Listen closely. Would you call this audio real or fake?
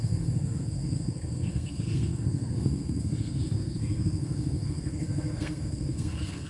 fake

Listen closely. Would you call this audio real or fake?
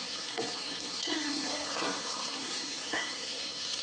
fake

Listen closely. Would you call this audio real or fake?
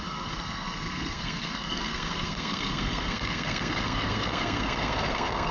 fake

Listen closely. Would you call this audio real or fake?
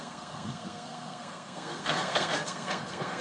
fake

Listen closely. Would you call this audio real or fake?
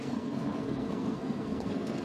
fake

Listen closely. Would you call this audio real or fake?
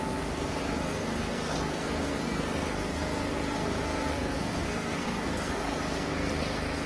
fake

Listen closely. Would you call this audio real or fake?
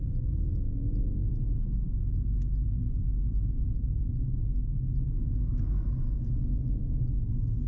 real